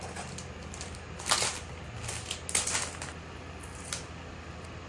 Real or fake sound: real